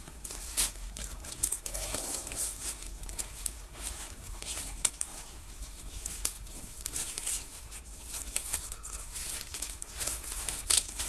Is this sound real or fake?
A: fake